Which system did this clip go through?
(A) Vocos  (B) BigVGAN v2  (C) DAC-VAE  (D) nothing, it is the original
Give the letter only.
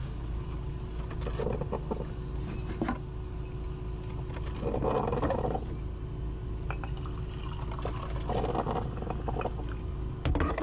D